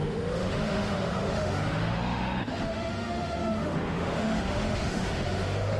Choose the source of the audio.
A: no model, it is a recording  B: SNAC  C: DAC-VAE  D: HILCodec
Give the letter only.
C